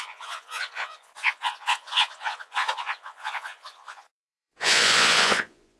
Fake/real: fake